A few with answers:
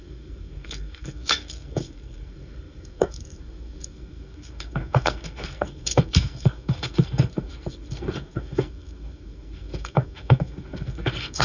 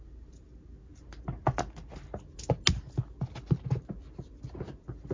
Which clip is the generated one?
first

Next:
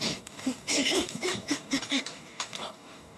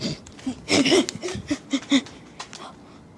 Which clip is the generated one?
first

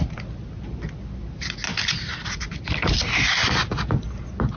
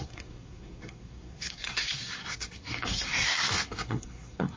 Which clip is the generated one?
second